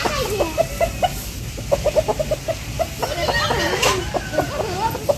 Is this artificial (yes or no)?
no